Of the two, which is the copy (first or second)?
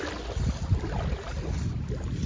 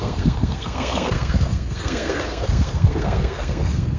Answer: second